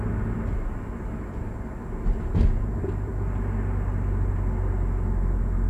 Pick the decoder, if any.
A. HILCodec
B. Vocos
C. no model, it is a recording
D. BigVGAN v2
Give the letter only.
C